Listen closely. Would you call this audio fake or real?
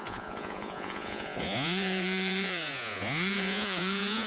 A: fake